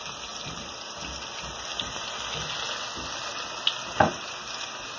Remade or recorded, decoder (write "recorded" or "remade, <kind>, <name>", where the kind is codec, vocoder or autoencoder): recorded